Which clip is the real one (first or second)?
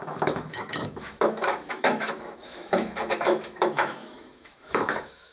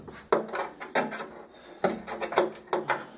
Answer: second